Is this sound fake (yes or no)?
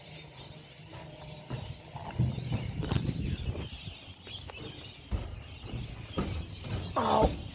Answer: no